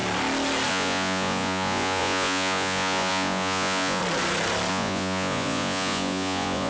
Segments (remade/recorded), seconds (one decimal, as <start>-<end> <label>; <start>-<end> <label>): 0.0-0.7 recorded; 0.7-4.0 remade; 4.0-4.7 recorded; 4.7-6.7 remade